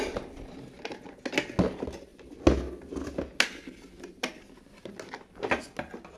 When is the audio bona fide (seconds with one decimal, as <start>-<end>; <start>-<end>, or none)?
0.0-6.2